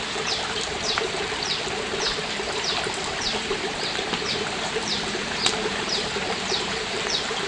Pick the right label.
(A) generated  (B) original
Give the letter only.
A